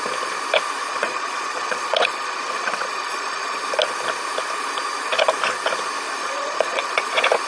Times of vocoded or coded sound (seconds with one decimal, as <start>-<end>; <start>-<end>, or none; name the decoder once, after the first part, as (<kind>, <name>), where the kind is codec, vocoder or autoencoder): 0.9-3.6 (vocoder, Vocos); 6.2-7.1